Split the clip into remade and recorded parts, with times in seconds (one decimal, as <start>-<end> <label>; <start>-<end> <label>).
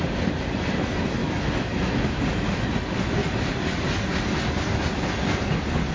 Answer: 0.0-1.2 recorded; 1.2-1.9 remade; 1.9-5.9 recorded